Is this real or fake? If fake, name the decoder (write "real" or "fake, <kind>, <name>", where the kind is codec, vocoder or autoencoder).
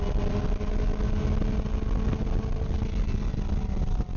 real